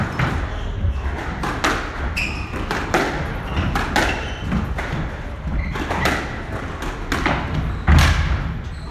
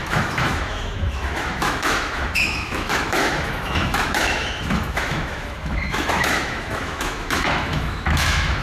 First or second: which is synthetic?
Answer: second